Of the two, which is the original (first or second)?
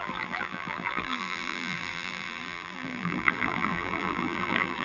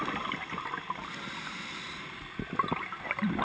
second